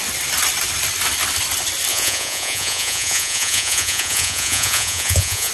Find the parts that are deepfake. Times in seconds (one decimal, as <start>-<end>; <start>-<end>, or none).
1.9-5.5